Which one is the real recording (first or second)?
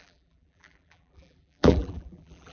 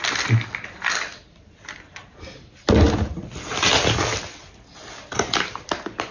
second